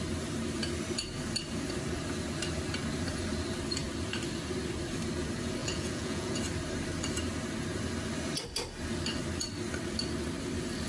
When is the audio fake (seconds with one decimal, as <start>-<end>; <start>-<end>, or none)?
5.6-6.4